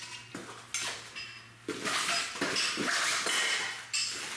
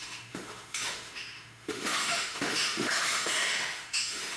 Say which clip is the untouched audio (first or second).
first